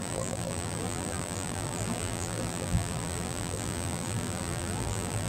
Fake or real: fake